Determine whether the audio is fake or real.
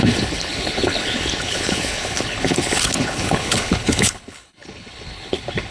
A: fake